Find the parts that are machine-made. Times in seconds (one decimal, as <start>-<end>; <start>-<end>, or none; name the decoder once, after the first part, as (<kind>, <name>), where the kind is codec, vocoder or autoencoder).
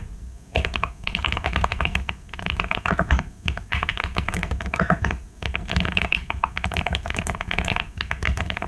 0.0-8.7 (codec, SNAC)